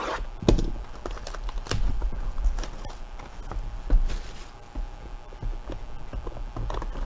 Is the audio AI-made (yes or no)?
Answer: no